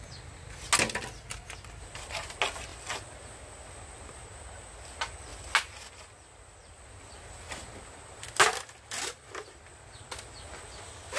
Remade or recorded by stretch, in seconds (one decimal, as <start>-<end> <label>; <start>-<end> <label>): 0.0-11.2 recorded

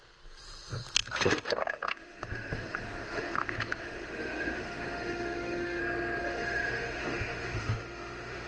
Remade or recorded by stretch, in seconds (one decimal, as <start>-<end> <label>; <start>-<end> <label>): 0.0-1.0 recorded; 1.0-5.8 remade; 5.8-6.2 recorded; 6.2-8.5 remade